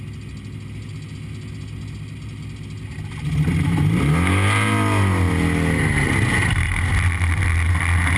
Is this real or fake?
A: real